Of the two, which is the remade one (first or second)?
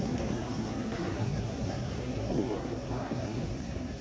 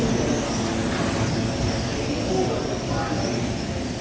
first